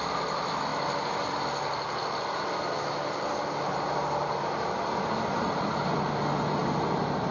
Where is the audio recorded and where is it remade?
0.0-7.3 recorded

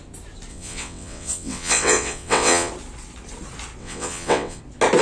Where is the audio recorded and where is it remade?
0.0-0.5 recorded; 0.5-2.7 remade; 2.7-3.8 recorded; 3.8-4.6 remade; 4.6-5.0 recorded

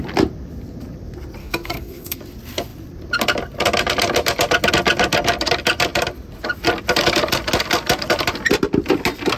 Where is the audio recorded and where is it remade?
0.0-1.4 recorded; 1.4-2.2 remade; 2.2-9.4 recorded

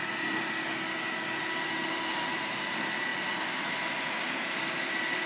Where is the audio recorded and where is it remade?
0.0-5.3 recorded

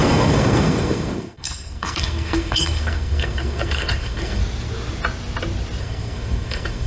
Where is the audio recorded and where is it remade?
0.0-4.4 remade; 4.4-5.8 recorded; 5.8-6.9 remade

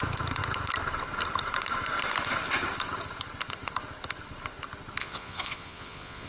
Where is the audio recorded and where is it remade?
0.0-5.0 recorded; 5.0-6.3 remade

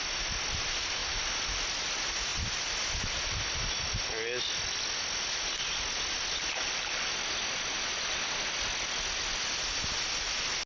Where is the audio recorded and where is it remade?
0.0-10.7 recorded

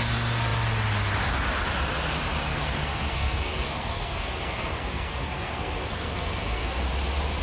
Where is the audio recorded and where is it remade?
0.0-2.4 recorded; 2.4-6.8 remade; 6.8-7.4 recorded